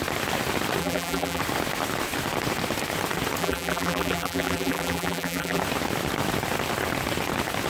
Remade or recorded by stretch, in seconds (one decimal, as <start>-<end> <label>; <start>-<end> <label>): 0.0-0.8 recorded; 0.8-1.4 remade; 1.4-3.4 recorded; 3.4-5.6 remade; 5.6-7.7 recorded